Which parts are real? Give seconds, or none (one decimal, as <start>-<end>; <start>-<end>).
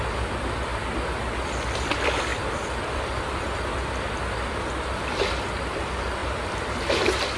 0.0-2.3; 4.1-6.2